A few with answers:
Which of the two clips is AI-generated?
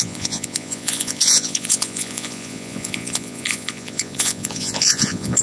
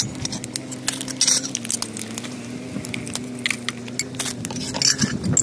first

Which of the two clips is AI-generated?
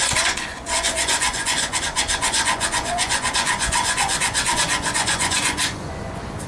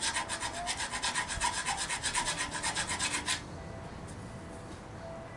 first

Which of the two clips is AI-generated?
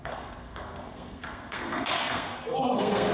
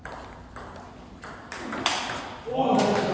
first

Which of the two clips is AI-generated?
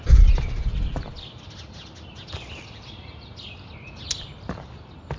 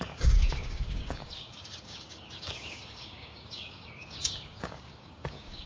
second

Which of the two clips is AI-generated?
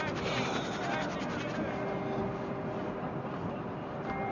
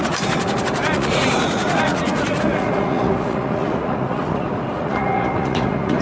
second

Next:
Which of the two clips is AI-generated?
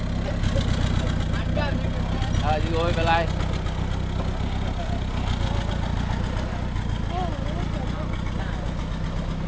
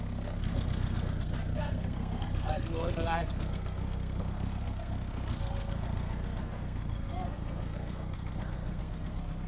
second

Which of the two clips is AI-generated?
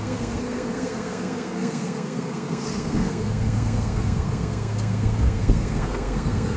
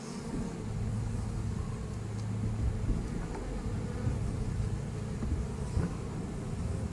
first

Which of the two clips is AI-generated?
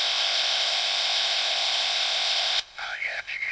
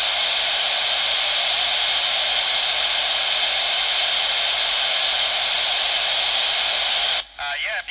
first